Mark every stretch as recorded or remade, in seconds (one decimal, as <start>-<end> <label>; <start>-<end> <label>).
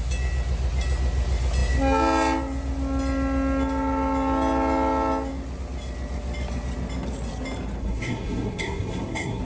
0.0-7.8 recorded; 7.8-9.4 remade